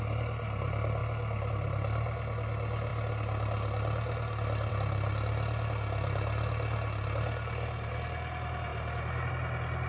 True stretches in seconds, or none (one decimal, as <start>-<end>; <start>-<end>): 0.0-9.9

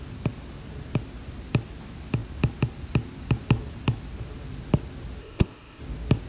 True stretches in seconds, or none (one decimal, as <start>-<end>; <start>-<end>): 0.0-5.2; 5.8-6.3

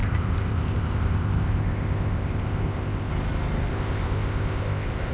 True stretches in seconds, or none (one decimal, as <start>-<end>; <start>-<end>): 3.1-3.7